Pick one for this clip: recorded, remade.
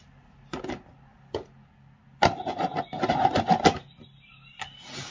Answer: recorded